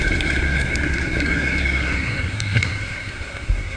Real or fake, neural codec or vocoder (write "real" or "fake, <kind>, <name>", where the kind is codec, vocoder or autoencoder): fake, codec, SNAC